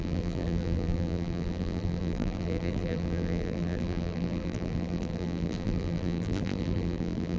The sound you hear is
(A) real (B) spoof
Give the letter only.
B